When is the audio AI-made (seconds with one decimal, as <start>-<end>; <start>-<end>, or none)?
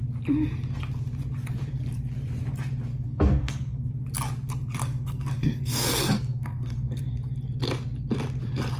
2.9-3.9; 4.8-7.0